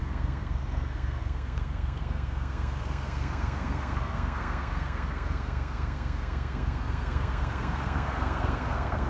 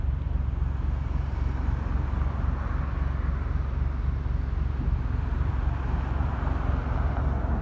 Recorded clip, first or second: second